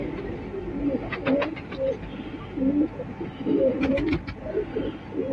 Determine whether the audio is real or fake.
real